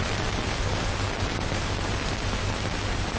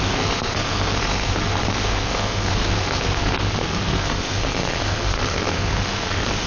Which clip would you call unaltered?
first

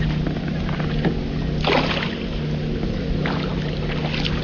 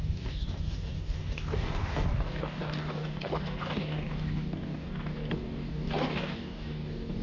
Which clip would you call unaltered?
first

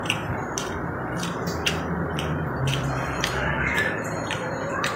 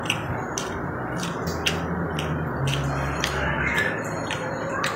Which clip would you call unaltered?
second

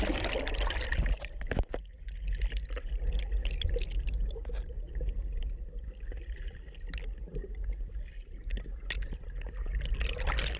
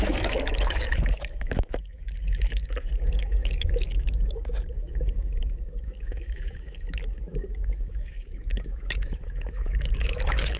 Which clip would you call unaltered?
first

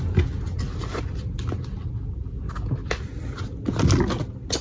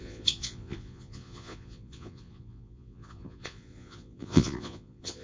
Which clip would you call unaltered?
first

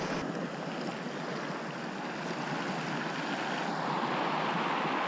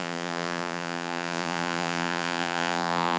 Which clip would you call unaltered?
first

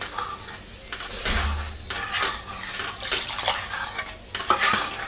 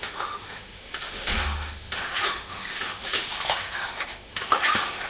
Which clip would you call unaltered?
first